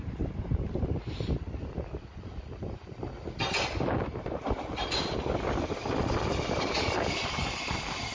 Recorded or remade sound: recorded